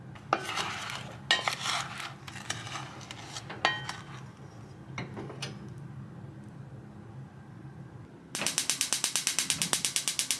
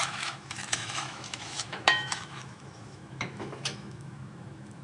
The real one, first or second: first